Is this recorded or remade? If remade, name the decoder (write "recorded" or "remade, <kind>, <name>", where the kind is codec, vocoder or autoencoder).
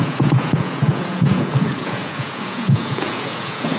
remade, vocoder, Vocos